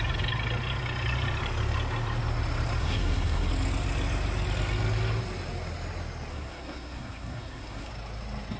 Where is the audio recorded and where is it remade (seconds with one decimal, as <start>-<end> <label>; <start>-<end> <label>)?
0.0-2.8 recorded; 2.8-3.5 remade; 3.5-6.3 recorded; 6.3-7.9 remade; 7.9-8.6 recorded